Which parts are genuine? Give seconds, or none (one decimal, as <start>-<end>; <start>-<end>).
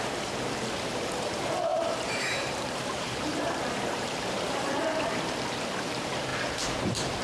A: none